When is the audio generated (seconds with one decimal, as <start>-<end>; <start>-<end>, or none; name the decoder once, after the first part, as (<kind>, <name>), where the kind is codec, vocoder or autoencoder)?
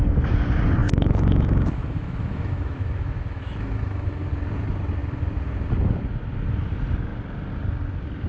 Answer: 0.8-4.3 (autoencoder, DAC-VAE)